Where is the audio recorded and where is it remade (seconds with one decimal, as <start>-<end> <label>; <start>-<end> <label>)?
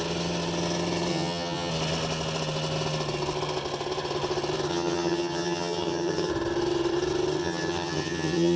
0.0-1.1 recorded; 1.1-1.7 remade; 1.7-4.7 recorded; 4.7-6.3 remade; 6.3-7.4 recorded; 7.4-8.6 remade